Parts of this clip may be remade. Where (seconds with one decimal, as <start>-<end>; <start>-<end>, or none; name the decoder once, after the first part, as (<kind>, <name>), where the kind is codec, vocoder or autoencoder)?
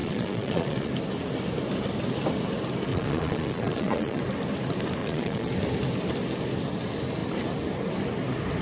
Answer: 0.0-0.9 (vocoder, Vocos); 2.9-4.2; 5.0-5.5